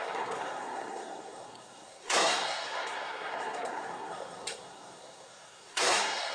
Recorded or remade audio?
remade